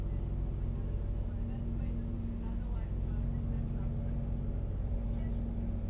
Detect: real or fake real